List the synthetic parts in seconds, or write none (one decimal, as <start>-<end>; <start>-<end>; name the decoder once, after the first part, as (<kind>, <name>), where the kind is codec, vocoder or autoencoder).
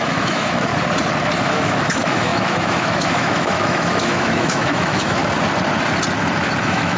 0.0-0.7 (autoencoder, DAC-VAE); 1.4-5.2; 6.6-7.0